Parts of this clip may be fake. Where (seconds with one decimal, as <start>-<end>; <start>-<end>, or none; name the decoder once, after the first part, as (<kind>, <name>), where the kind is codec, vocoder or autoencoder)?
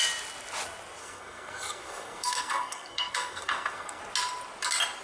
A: 1.0-4.0 (codec, SNAC)